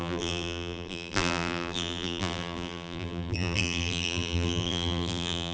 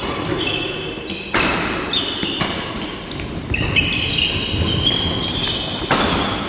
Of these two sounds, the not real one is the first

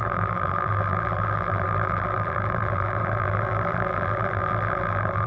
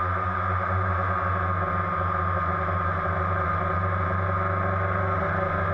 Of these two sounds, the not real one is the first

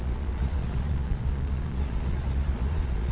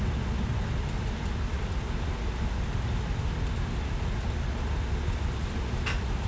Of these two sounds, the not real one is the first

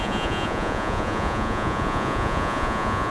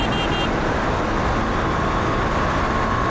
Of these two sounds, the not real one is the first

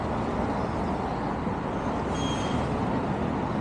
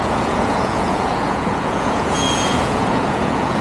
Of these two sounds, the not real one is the second